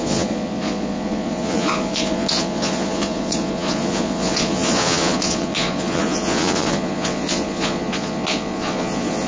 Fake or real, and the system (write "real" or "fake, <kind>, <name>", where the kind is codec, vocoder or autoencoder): fake, vocoder, Vocos